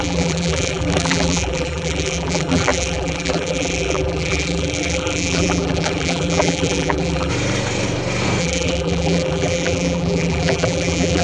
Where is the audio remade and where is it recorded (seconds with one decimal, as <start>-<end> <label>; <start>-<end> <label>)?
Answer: 0.0-7.3 remade; 7.3-8.4 recorded; 8.4-11.2 remade